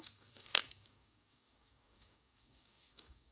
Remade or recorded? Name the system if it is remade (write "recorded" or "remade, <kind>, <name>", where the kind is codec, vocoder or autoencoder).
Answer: remade, codec, DAC